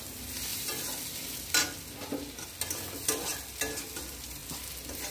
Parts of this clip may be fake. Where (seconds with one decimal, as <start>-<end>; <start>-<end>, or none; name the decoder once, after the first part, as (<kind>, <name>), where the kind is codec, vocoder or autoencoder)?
none